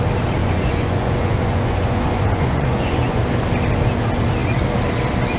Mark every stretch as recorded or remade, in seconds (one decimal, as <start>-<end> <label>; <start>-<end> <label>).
0.0-0.4 recorded; 0.4-3.2 remade; 3.2-5.4 recorded